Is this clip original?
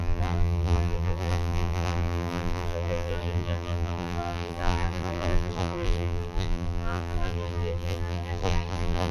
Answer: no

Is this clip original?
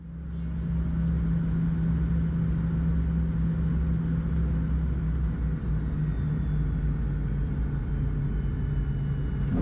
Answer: yes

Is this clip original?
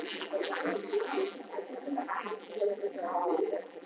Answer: no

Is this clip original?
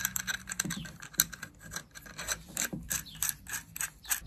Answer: no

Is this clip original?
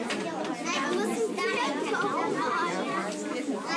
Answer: yes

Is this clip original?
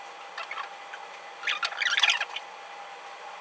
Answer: yes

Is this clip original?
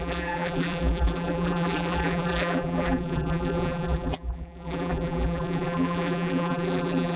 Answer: no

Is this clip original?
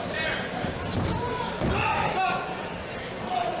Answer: yes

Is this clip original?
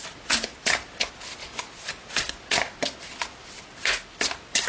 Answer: yes